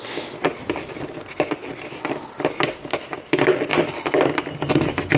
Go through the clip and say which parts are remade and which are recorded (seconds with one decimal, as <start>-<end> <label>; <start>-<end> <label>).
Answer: 0.0-5.2 recorded